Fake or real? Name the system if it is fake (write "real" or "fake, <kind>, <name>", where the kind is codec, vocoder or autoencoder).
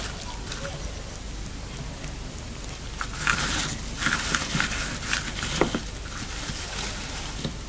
real